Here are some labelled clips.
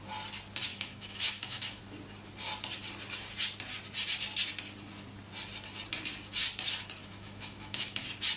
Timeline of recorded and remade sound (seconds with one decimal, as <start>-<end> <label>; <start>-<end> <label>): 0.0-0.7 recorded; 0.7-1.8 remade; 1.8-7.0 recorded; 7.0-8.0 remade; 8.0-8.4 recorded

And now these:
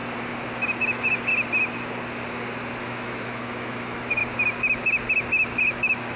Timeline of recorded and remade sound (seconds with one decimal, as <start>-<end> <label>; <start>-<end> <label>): 0.0-0.8 recorded; 0.8-1.3 remade; 1.3-2.8 recorded; 2.8-4.2 remade; 4.2-5.7 recorded; 5.7-6.2 remade

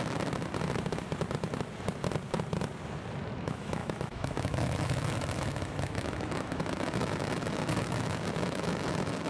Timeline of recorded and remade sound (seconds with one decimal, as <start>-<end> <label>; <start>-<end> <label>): 0.0-3.4 recorded; 3.4-9.3 remade

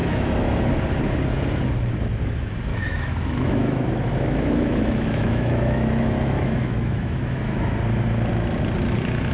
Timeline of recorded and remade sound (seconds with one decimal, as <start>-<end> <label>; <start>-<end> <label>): 0.0-0.7 remade; 0.7-2.7 recorded; 2.7-7.6 remade; 7.6-9.3 recorded

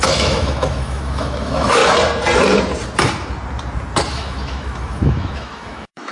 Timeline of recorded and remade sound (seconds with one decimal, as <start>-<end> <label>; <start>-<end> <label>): 0.0-1.8 remade; 1.8-4.1 recorded; 4.1-6.1 remade

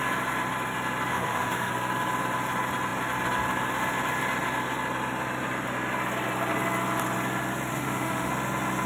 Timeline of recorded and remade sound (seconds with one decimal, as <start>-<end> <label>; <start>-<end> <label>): 0.0-1.1 recorded; 1.1-1.7 remade; 1.7-7.7 recorded; 7.7-8.3 remade; 8.3-8.9 recorded